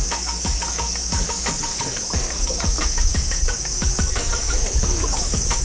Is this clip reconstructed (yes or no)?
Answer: yes